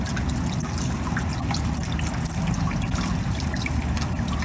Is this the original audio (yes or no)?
yes